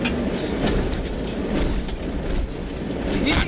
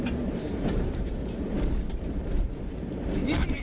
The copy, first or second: second